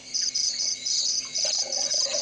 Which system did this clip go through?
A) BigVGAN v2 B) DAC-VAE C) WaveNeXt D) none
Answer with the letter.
C